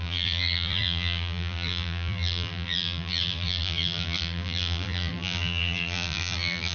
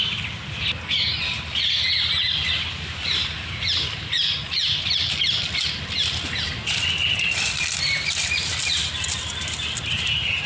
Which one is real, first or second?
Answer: second